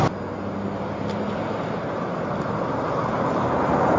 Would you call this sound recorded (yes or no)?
yes